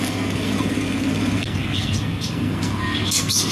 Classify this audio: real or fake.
fake